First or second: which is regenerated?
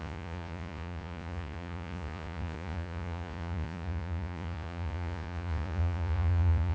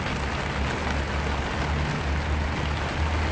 first